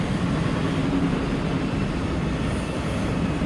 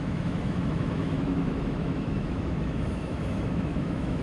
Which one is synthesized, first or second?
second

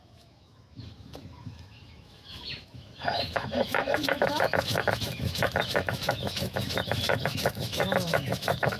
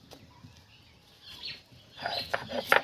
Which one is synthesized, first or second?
first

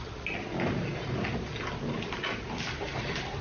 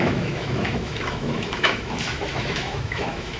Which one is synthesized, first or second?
second